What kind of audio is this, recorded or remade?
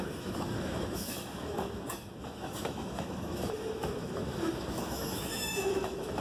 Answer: remade